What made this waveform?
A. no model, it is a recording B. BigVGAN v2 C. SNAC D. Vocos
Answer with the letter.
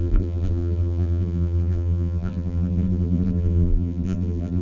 B